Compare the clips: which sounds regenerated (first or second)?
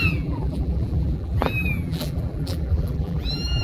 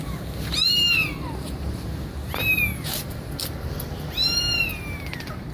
first